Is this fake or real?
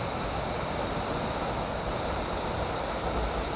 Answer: real